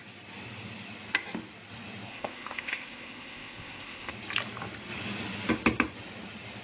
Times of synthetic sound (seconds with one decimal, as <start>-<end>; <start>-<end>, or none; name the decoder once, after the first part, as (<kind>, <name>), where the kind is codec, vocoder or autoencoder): 2.1-4.1 (codec, ZipCodec)